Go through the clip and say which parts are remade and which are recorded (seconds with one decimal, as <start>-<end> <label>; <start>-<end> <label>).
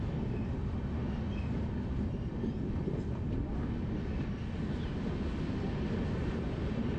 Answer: 0.0-6.2 recorded; 6.2-7.0 remade